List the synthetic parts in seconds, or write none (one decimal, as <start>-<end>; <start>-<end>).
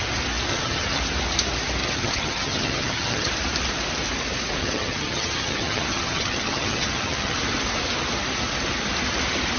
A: 0.5-1.0; 1.8-3.3; 4.6-7.4